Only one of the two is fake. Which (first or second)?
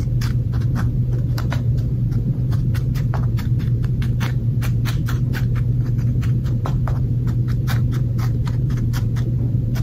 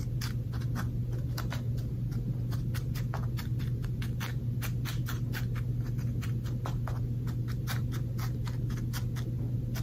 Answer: first